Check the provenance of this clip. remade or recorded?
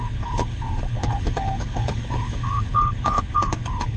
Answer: remade